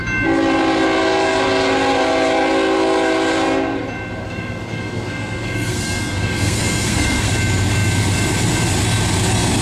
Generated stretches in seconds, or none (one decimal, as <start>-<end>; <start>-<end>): 4.2-7.3